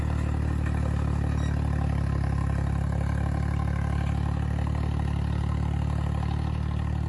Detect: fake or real real